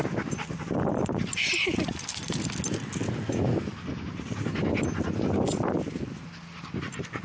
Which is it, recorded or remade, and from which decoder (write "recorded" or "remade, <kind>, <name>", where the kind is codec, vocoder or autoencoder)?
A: recorded